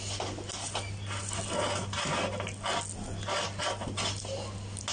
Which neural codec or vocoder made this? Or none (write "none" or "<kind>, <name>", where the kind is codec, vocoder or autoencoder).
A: none